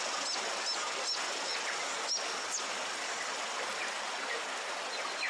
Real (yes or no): yes